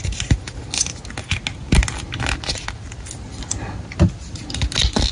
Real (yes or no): yes